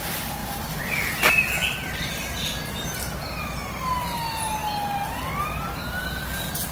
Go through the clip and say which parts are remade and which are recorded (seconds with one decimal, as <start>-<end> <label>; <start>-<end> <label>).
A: 0.0-6.7 recorded